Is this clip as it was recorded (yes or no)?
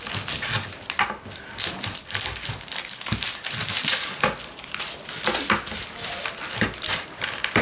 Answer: yes